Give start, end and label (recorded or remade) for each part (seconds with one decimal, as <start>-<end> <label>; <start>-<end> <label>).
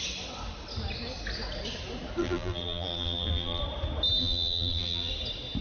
0.0-2.2 recorded; 2.2-3.6 remade; 3.6-4.2 recorded; 4.2-5.1 remade; 5.1-5.6 recorded